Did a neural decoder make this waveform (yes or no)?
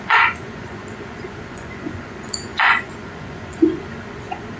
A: yes